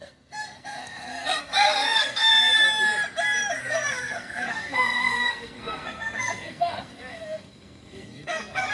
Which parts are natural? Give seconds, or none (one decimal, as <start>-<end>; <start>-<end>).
2.3-3.6